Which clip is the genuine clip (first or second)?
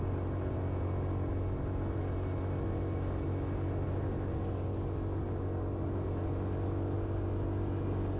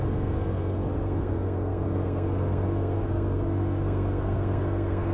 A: first